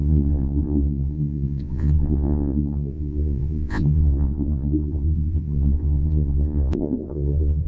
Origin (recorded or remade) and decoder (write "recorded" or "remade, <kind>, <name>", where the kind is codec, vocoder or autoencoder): remade, vocoder, Vocos